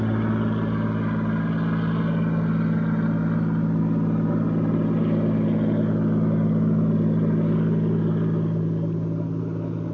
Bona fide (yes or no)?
yes